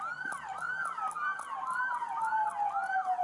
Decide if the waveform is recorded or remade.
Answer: recorded